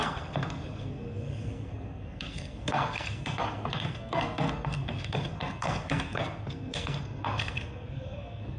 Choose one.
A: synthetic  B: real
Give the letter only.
A